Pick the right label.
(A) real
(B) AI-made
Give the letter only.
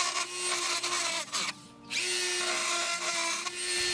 A